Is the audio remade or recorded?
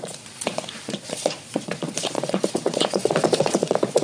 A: remade